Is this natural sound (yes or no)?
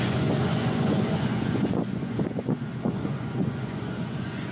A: no